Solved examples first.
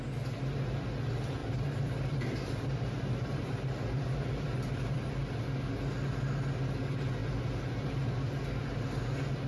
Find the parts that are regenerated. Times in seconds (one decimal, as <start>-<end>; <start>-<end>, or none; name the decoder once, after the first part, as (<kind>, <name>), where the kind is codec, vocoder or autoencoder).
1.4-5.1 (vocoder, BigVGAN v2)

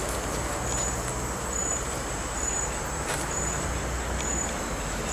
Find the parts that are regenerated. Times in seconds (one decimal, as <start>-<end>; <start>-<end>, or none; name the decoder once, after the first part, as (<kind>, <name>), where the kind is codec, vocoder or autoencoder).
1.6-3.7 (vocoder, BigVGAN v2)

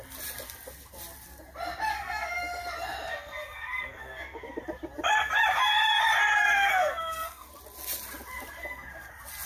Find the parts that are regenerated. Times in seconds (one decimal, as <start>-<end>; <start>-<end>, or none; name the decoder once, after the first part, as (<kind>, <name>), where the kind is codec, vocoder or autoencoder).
1.9-2.4 (codec, SNAC); 3.1-4.6; 6.5-7.5; 8.6-9.1